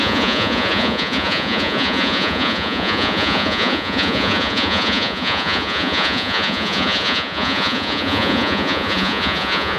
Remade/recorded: remade